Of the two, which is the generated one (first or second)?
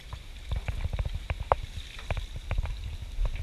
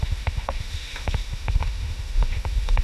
second